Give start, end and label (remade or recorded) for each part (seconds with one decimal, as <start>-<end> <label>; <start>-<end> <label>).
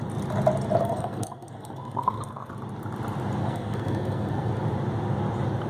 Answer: 0.0-0.8 recorded; 0.8-2.5 remade; 2.5-3.4 recorded; 3.4-4.5 remade; 4.5-5.7 recorded